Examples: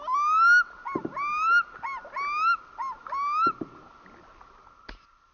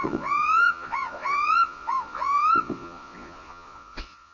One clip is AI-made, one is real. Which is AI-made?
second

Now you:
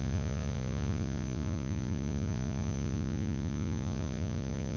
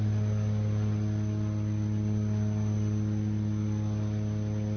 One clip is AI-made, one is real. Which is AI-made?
first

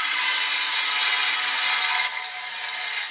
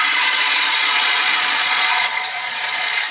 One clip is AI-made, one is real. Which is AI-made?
second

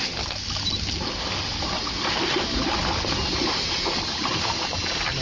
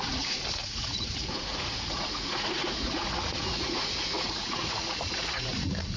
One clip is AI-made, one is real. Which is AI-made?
second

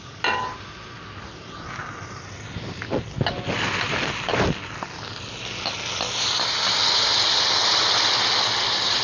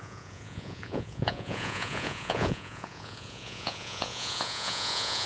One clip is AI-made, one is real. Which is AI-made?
second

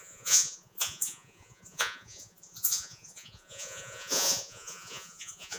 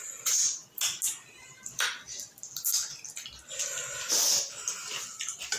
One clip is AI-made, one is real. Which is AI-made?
first